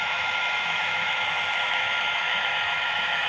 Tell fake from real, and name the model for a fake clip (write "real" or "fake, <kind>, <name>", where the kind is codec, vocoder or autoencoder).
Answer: fake, autoencoder, DAC-VAE